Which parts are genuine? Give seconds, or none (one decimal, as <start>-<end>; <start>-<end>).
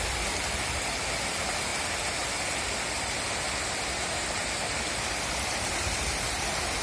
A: 0.0-6.8